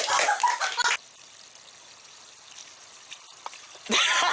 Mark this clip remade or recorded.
recorded